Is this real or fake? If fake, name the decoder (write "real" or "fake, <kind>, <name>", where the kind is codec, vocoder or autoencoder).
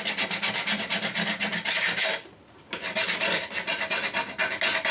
real